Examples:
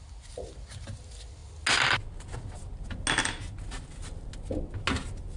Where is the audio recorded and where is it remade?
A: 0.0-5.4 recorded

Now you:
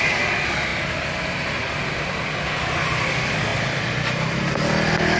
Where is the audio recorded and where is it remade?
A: 0.0-3.5 recorded; 3.5-4.3 remade; 4.3-5.2 recorded

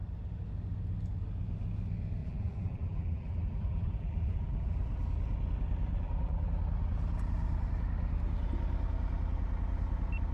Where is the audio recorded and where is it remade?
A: 0.0-2.2 recorded; 2.2-4.8 remade; 4.8-5.9 recorded; 5.9-6.6 remade; 6.6-10.3 recorded

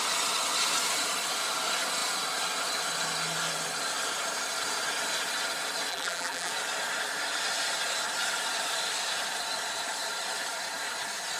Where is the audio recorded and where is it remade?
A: 0.0-5.9 recorded; 5.9-6.5 remade; 6.5-11.4 recorded

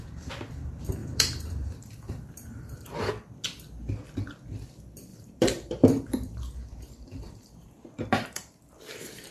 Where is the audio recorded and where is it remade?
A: 0.0-1.0 recorded; 1.0-3.1 remade; 3.1-5.1 recorded; 5.1-8.6 remade; 8.6-9.3 recorded